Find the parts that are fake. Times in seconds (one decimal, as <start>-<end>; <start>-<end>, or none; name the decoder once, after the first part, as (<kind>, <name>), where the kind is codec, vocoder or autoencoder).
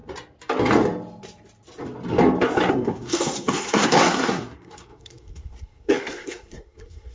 2.7-7.1 (codec, SNAC)